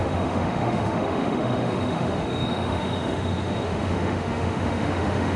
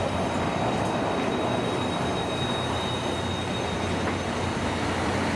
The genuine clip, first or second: second